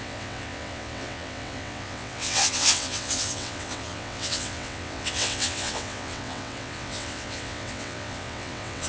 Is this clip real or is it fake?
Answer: fake